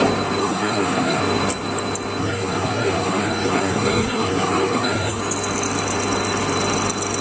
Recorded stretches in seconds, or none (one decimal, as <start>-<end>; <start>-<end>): 0.0-0.4; 1.2-2.2; 5.2-7.2